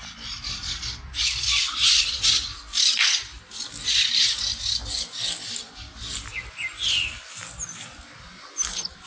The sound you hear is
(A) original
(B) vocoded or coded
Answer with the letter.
A